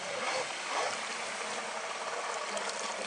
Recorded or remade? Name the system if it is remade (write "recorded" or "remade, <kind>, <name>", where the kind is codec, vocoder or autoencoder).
recorded